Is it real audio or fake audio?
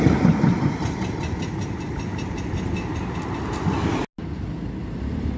real